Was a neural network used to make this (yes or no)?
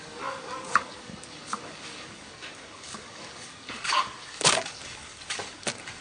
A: yes